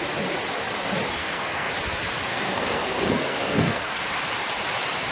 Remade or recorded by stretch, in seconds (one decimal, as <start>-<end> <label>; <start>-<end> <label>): 0.0-1.2 recorded; 1.2-1.7 remade; 1.7-2.3 recorded; 2.3-4.0 remade; 4.0-5.1 recorded